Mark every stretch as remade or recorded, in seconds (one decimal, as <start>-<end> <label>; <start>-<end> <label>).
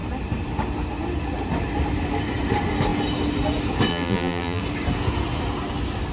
0.0-3.9 recorded; 3.9-4.6 remade; 4.6-6.1 recorded